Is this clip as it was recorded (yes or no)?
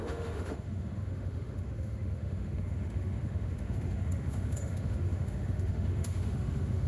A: no